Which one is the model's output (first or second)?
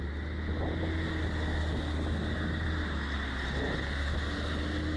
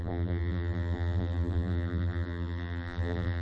second